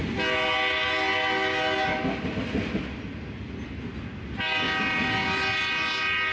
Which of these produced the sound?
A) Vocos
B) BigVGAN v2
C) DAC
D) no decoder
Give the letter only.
D